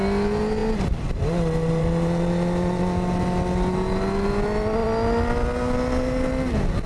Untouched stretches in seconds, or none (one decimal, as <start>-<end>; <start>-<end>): 0.0-6.9